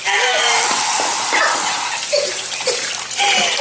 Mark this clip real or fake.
real